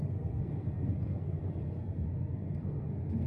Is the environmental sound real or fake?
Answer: fake